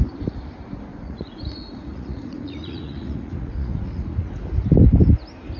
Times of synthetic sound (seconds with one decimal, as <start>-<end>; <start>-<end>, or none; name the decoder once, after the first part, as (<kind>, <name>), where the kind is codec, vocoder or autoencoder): 0.9-4.3 (vocoder, Vocos)